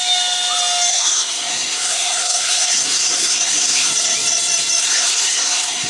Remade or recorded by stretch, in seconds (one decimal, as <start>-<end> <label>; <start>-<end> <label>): 0.0-0.9 recorded; 0.9-3.9 remade; 3.9-4.8 recorded; 4.8-5.9 remade